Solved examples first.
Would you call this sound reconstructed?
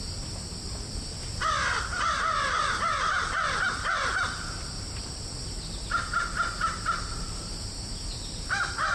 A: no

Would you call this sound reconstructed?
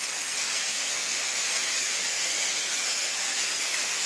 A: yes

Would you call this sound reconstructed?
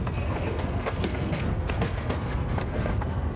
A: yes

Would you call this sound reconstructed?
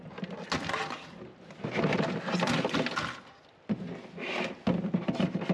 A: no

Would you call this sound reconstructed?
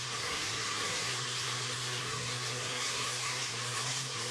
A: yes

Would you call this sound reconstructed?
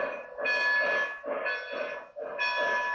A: no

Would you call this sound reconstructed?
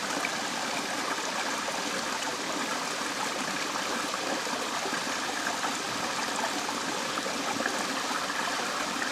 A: no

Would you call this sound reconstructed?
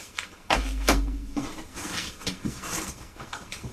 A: yes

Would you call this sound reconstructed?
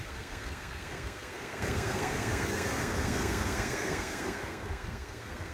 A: yes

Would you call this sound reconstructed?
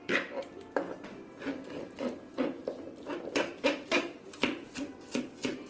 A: no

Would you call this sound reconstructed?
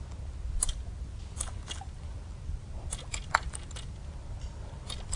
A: no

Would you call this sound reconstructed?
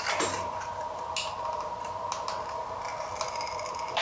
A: no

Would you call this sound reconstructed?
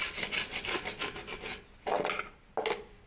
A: no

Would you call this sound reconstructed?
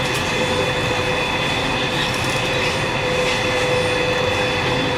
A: no